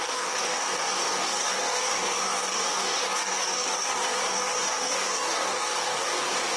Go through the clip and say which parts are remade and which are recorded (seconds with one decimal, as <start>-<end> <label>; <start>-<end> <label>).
0.0-6.6 remade